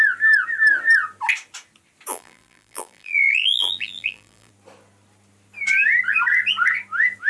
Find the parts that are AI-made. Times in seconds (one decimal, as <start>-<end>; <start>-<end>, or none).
2.1-4.5